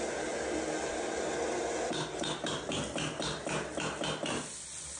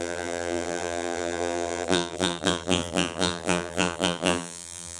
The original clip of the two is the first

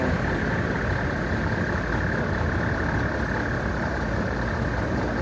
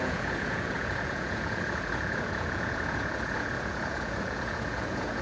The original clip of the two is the first